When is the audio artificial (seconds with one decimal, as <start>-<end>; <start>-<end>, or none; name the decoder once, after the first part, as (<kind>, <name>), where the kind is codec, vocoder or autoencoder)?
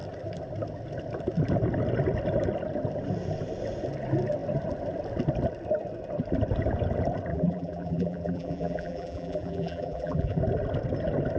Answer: 7.3-10.4 (vocoder, BigVGAN v2)